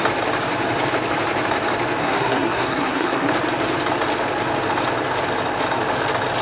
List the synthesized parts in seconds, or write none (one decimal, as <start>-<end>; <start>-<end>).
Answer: 2.0-3.3